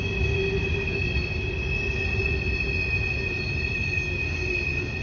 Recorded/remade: recorded